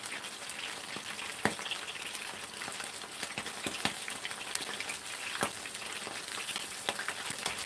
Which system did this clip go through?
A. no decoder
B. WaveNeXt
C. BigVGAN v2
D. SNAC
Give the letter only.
A